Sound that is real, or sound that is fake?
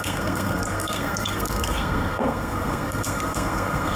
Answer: fake